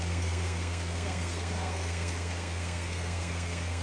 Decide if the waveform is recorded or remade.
remade